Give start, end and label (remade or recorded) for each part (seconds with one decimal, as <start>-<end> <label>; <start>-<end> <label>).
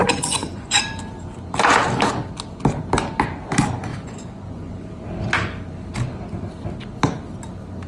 0.0-0.8 remade; 0.8-3.9 recorded; 3.9-4.9 remade; 4.9-7.9 recorded